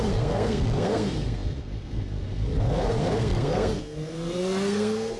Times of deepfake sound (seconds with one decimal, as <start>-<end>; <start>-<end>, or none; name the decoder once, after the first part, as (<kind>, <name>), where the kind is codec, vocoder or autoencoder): 0.0-5.2 (codec, SNAC)